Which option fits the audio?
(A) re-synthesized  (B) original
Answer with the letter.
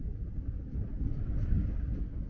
B